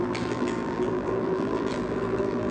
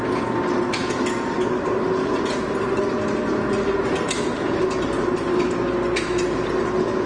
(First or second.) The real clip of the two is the second